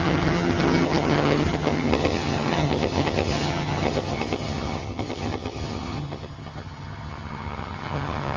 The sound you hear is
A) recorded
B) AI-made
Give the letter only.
B